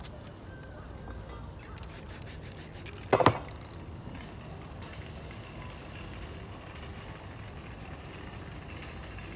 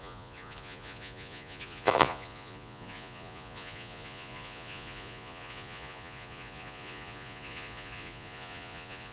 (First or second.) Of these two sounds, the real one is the first